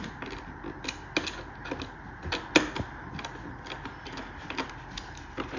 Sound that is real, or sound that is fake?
real